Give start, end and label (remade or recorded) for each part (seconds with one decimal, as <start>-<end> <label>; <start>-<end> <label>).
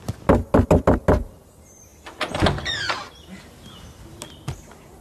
0.0-5.0 recorded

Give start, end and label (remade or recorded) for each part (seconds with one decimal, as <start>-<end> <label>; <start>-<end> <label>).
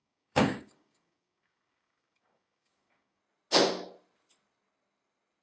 0.0-3.2 remade; 3.2-5.4 recorded